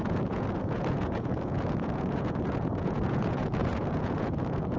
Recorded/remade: remade